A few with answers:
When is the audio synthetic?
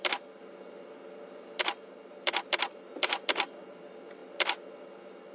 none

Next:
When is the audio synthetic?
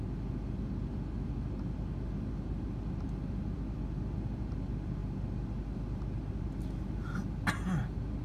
none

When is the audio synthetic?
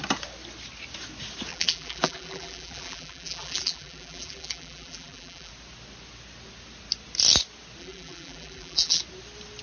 1.5-5.5 (vocoder, BigVGAN v2); 7.8-9.0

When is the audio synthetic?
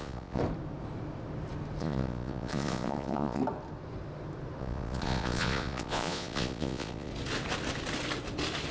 0.0-0.4 (vocoder, Vocos); 1.8-3.4; 4.6-7.1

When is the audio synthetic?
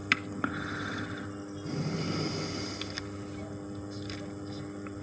none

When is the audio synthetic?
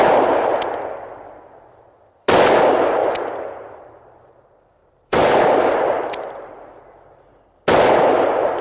4.8-6.0 (vocoder, BigVGAN v2)